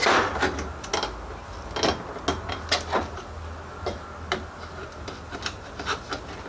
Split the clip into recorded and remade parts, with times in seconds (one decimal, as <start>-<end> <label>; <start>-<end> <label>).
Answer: 0.0-6.5 recorded